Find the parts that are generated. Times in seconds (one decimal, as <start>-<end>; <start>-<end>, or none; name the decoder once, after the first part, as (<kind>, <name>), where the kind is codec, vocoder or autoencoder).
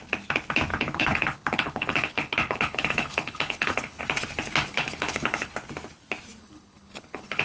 0.7-4.0 (codec, HILCodec); 4.7-5.5; 6.4-7.4